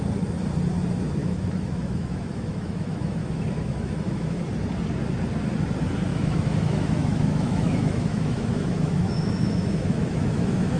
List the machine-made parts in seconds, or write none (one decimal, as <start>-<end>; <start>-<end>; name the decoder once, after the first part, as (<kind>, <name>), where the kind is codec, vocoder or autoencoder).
1.2-4.4 (autoencoder, DAC-VAE); 6.1-10.8

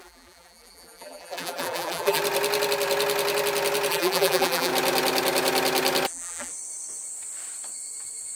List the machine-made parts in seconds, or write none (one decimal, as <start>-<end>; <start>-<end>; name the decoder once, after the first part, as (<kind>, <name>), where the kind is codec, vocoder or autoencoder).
0.0-2.2 (vocoder, BigVGAN v2); 3.9-4.7; 6.1-6.5

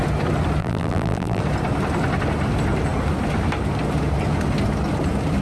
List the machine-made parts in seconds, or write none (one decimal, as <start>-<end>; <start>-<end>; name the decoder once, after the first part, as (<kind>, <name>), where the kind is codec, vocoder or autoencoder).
0.6-1.4 (vocoder, BigVGAN v2)